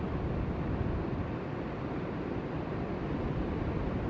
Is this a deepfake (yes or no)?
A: no